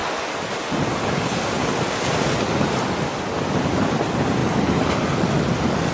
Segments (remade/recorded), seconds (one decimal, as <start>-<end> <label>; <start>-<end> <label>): 0.0-5.9 recorded